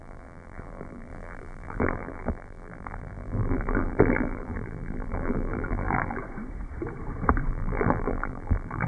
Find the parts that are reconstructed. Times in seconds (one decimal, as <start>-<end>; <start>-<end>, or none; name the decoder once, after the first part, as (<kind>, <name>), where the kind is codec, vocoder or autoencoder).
0.0-6.2 (vocoder, BigVGAN v2); 7.5-8.9